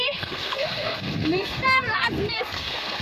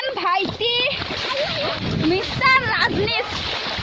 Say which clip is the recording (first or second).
second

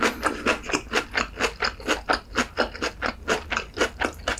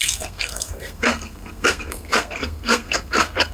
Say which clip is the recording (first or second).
first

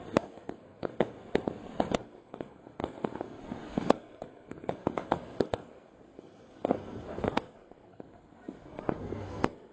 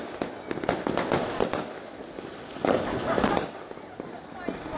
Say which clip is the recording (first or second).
second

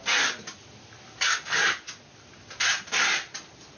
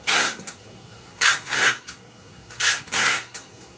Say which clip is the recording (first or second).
first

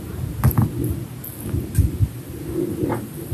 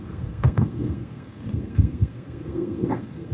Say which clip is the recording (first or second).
first